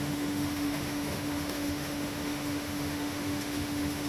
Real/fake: fake